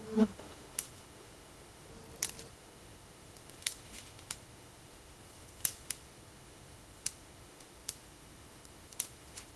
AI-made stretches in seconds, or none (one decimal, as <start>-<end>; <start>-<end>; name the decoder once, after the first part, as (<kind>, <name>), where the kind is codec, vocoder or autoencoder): 0.0-1.9 (autoencoder, DAC-VAE); 2.5-9.6